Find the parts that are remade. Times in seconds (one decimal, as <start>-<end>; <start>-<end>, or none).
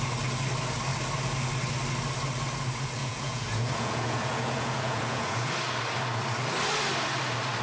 3.0-5.5